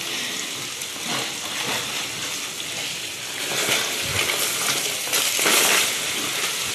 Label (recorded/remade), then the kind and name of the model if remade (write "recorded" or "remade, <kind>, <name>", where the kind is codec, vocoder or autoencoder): recorded